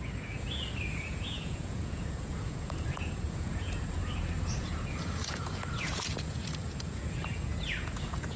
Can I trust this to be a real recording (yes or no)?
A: no